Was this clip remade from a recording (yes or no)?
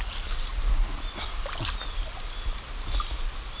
no